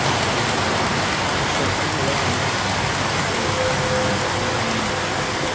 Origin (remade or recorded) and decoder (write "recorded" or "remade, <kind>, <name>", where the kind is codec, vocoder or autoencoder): recorded